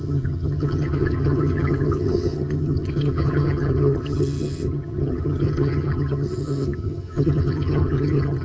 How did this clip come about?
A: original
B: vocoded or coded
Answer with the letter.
B